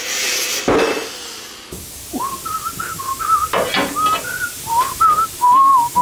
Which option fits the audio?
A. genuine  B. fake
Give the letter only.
A